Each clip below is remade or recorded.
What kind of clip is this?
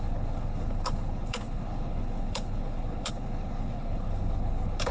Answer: remade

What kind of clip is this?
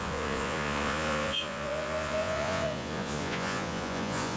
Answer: remade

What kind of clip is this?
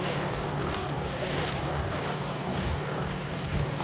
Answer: remade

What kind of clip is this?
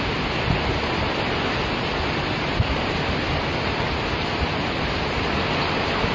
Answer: recorded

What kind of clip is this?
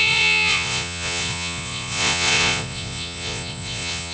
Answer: remade